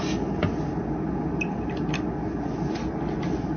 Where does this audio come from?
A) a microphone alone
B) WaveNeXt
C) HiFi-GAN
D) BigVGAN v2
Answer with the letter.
A